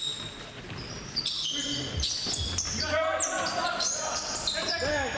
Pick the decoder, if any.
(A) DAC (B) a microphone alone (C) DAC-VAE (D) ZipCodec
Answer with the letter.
B